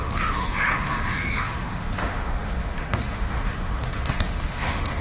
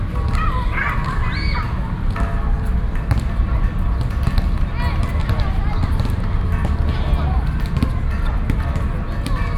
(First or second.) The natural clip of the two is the second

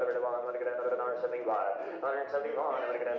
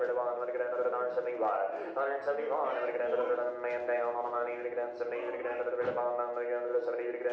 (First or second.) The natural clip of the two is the second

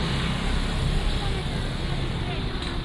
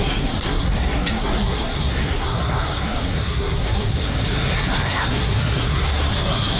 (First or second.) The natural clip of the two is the first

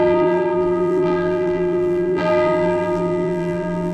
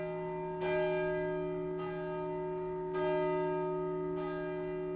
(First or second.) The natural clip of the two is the second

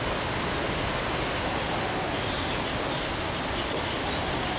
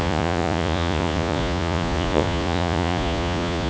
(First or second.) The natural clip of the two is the first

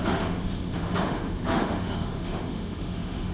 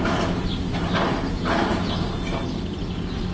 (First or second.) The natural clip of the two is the second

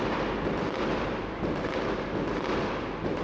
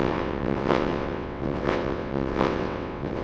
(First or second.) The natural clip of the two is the first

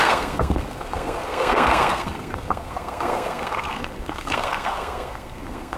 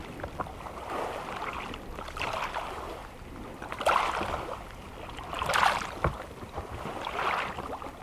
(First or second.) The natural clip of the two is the second